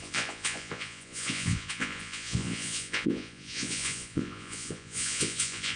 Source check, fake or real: fake